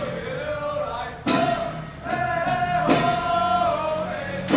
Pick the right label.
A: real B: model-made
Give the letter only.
A